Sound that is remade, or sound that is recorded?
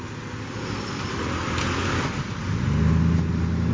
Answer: recorded